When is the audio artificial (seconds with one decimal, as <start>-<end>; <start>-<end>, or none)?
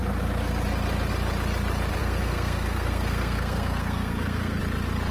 2.0-4.6